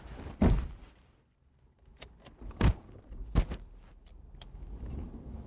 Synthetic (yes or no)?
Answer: yes